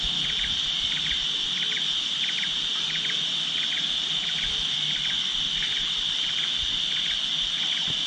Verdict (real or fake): real